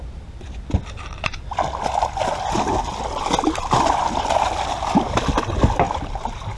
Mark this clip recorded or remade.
recorded